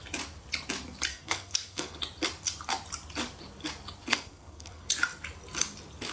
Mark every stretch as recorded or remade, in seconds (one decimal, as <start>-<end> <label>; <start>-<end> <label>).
0.0-1.1 recorded; 1.1-2.0 remade; 2.0-4.1 recorded; 4.1-4.9 remade; 4.9-6.1 recorded